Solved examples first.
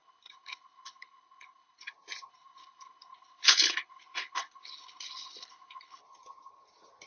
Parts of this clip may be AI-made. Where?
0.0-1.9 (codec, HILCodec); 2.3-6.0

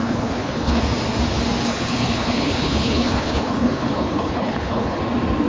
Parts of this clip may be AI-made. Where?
0.0-0.8 (codec, HILCodec); 1.7-5.0

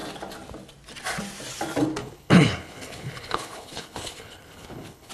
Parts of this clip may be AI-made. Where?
2.0-5.1 (codec, HILCodec)

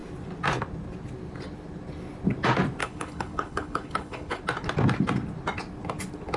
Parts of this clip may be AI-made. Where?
2.8-4.4 (codec, HILCodec)

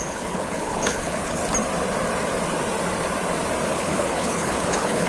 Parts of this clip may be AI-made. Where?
0.0-1.4 (codec, HILCodec); 3.7-5.1

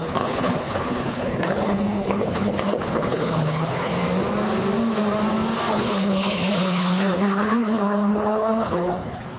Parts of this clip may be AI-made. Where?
0.0-3.9 (codec, HILCodec); 5.7-9.4

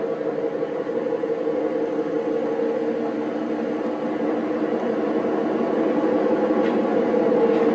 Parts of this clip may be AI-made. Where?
none